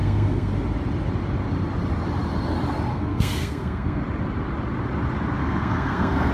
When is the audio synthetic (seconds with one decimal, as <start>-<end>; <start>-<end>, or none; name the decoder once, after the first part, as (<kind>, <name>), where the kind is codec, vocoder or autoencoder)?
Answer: 0.0-0.5 (codec, SNAC); 2.9-4.0; 5.4-6.3